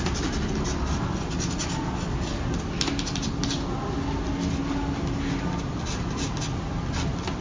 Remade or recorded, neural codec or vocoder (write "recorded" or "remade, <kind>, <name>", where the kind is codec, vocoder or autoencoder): recorded